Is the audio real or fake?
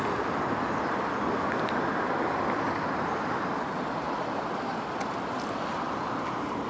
real